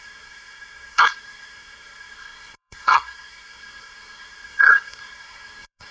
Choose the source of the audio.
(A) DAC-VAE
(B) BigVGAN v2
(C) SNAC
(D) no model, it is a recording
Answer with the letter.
C